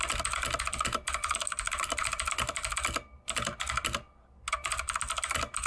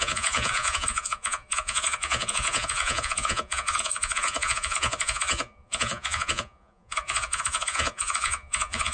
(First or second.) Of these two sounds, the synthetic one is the second